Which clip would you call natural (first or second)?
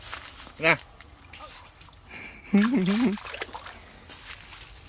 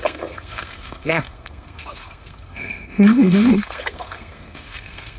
first